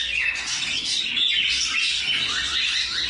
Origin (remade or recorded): recorded